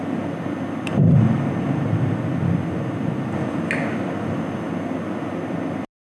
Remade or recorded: recorded